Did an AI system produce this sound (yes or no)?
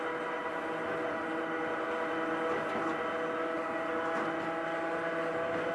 no